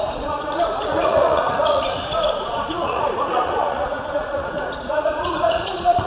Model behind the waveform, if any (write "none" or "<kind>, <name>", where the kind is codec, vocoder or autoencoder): vocoder, Vocos